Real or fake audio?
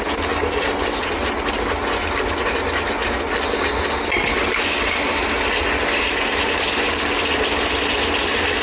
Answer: real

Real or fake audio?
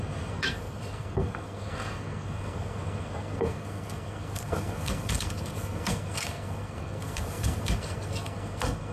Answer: fake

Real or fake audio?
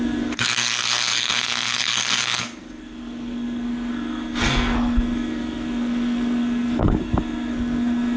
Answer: fake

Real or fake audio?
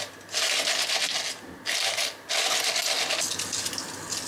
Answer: real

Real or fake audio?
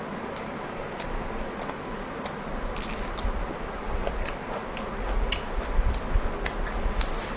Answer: real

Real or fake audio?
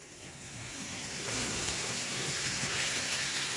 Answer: fake